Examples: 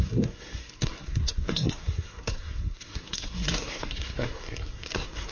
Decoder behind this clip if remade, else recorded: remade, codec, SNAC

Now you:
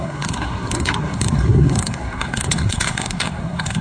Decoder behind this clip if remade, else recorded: remade, codec, SNAC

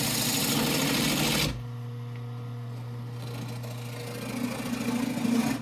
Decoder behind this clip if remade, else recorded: recorded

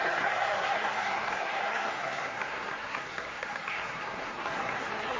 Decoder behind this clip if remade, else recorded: remade, codec, SNAC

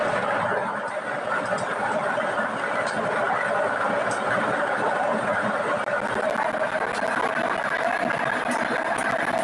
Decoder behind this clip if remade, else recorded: recorded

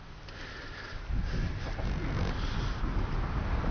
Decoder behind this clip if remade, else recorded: recorded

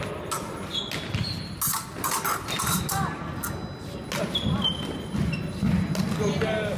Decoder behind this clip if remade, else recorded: recorded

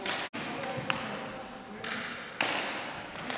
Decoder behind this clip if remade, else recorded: recorded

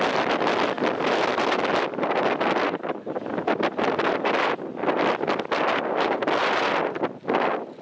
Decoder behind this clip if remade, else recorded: recorded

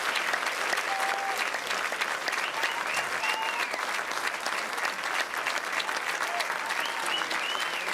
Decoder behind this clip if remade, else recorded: recorded